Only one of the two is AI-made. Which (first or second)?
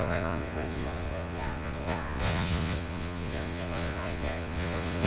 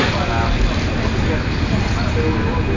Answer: first